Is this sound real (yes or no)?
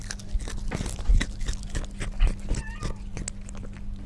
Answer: yes